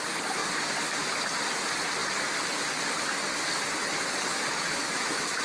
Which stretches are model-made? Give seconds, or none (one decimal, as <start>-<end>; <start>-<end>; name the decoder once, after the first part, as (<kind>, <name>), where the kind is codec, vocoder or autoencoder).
4.3-5.4 (autoencoder, DAC-VAE)